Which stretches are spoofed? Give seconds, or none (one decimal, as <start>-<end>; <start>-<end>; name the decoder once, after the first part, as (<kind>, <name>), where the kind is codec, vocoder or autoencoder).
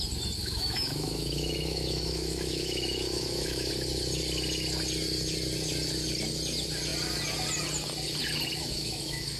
0.4-3.7 (autoencoder, DAC-VAE); 8.6-9.4